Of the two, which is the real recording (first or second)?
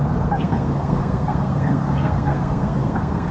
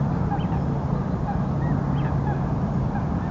second